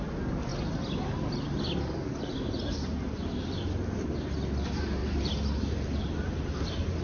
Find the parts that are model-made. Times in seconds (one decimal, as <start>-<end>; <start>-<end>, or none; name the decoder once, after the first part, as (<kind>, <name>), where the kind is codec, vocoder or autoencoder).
0.5-3.3 (vocoder, BigVGAN v2); 5.0-5.7